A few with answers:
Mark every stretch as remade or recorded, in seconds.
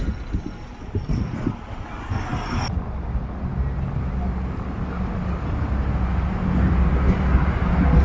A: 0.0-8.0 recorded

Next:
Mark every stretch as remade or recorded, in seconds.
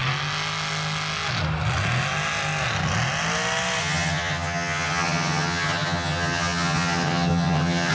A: 0.0-3.8 recorded; 3.8-7.9 remade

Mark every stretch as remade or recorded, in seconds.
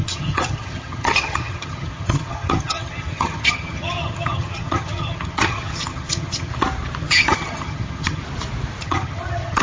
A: 0.0-6.5 remade; 6.5-7.0 recorded; 7.0-8.2 remade; 8.2-8.8 recorded; 8.8-9.6 remade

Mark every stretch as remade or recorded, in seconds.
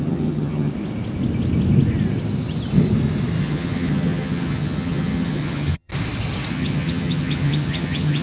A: 0.0-0.7 remade; 0.7-3.4 recorded; 3.4-5.9 remade; 5.9-6.5 recorded; 6.5-8.2 remade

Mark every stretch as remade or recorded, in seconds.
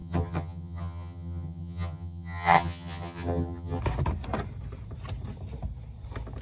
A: 0.0-3.8 remade; 3.8-6.4 recorded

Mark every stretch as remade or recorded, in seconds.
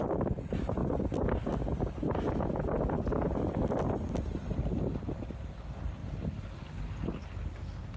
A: 0.0-8.0 recorded